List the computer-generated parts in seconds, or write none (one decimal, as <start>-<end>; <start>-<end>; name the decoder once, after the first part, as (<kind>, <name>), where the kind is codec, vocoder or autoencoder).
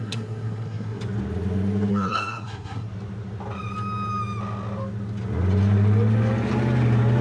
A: 0.0-1.0 (codec, SNAC); 1.9-2.9